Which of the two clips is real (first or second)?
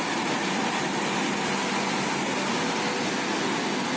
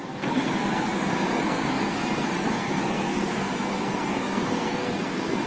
first